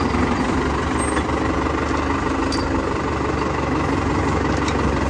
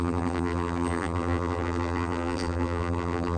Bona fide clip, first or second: first